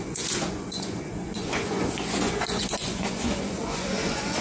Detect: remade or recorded remade